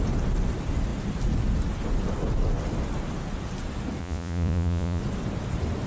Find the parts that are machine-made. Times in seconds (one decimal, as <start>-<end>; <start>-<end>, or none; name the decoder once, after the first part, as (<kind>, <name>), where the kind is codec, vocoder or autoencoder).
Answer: 4.0-5.0 (vocoder, Vocos)